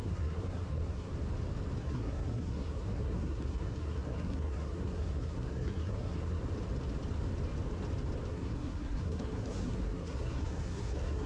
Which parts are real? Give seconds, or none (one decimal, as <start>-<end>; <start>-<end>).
1.1-1.8; 6.4-8.3